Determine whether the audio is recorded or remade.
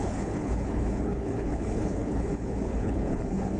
remade